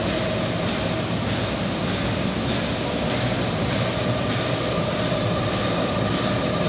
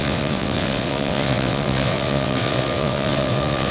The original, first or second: first